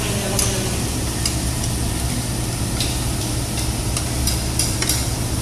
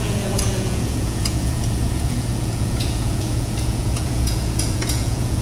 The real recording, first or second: first